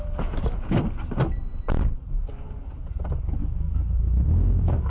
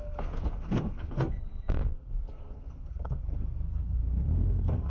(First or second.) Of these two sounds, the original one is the first